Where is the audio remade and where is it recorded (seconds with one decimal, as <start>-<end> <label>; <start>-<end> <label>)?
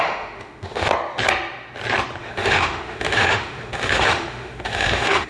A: 0.0-0.9 remade; 0.9-2.2 recorded; 2.2-5.3 remade